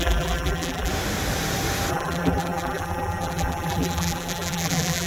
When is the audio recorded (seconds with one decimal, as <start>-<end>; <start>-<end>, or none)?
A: 0.9-1.9